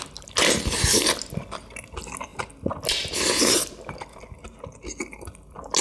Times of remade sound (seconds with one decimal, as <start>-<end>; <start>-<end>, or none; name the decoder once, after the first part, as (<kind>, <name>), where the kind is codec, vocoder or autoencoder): none